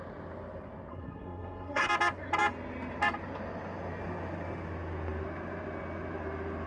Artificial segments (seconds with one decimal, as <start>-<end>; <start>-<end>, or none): 0.9-1.9